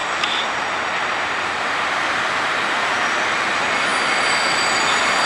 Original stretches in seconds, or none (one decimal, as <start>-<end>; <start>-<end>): 1.3-5.3